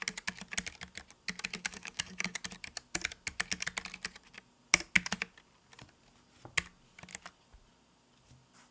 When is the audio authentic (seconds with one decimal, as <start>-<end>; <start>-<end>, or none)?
0.0-1.6; 2.4-8.7